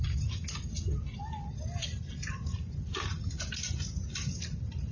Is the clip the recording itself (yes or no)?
yes